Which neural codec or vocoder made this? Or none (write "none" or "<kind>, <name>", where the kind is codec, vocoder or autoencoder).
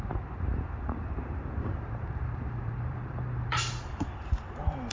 vocoder, BigVGAN v2